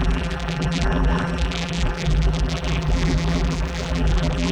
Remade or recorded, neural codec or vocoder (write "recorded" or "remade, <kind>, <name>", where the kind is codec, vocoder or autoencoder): remade, vocoder, BigVGAN v2